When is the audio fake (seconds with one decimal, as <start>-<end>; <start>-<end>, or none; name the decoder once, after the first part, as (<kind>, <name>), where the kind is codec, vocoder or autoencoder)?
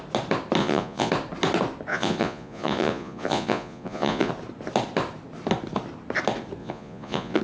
0.6-1.1 (vocoder, Vocos); 1.9-4.3; 6.6-7.4